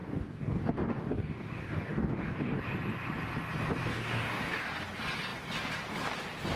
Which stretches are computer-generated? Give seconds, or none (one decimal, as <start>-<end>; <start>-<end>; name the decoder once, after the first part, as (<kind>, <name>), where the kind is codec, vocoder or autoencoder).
0.0-2.6 (codec, DAC); 3.9-4.6